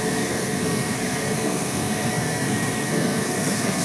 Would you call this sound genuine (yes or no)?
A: no